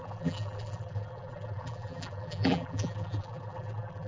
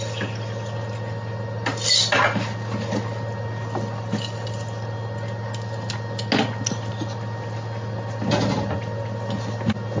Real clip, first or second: second